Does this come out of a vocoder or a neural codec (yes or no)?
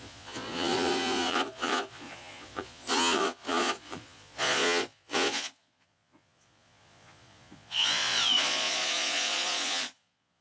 yes